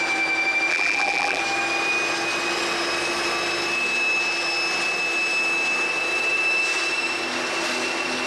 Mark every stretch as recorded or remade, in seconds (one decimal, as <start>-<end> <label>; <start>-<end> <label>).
0.0-0.7 recorded; 0.7-1.4 remade; 1.4-8.3 recorded